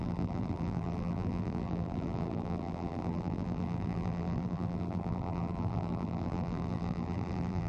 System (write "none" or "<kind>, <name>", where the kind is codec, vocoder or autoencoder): vocoder, BigVGAN v2